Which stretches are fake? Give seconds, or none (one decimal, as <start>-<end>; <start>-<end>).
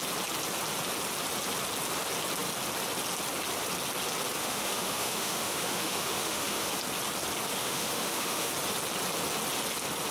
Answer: 4.4-6.7; 7.6-8.5